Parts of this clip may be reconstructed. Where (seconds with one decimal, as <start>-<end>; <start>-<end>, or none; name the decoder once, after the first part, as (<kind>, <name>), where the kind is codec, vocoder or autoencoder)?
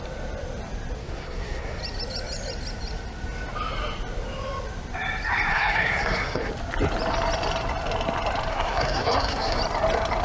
1.0-1.8 (codec, SNAC); 5.5-6.5; 8.5-9.6